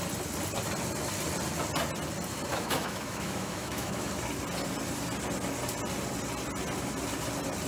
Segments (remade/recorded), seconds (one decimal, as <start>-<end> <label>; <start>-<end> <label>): 0.0-2.5 recorded; 2.5-4.1 remade; 4.1-7.7 recorded

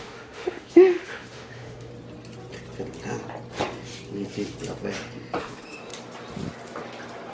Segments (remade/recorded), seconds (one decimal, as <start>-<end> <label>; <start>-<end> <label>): 0.0-1.9 remade; 1.9-5.4 recorded; 5.4-5.9 remade; 5.9-7.3 recorded

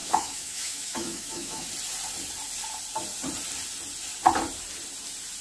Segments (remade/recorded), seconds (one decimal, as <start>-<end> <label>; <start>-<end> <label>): 0.0-1.7 remade; 1.7-5.4 recorded

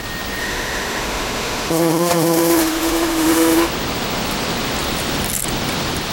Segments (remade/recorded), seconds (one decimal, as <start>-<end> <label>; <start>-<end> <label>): 0.0-0.4 recorded; 0.4-3.7 remade; 3.7-6.1 recorded

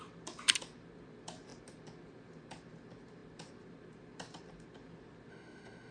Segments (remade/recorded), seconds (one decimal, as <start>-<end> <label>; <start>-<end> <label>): 0.0-5.3 recorded; 5.3-5.9 remade

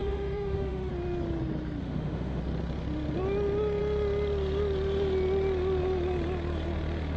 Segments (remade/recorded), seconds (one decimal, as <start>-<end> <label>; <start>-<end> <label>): 0.0-0.9 remade; 0.9-1.8 recorded; 1.8-2.4 remade; 2.4-7.2 recorded